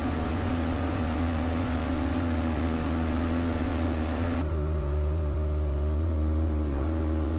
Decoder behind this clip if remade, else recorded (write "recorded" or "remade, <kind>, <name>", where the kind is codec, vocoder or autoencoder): remade, vocoder, Vocos